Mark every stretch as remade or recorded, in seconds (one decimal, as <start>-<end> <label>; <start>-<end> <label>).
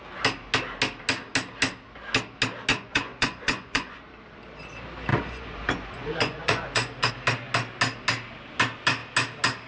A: 0.0-2.7 recorded; 2.7-4.0 remade; 4.0-5.1 recorded; 5.1-7.1 remade; 7.1-9.7 recorded